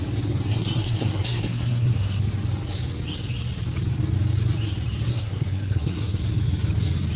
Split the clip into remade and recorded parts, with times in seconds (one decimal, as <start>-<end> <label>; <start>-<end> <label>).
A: 0.0-0.5 recorded; 0.5-2.2 remade; 2.2-5.1 recorded; 5.1-6.4 remade; 6.4-7.2 recorded